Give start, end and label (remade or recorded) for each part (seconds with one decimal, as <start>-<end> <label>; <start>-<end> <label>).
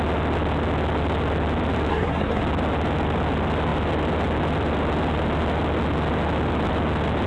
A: 0.0-1.9 recorded; 1.9-2.4 remade; 2.4-7.3 recorded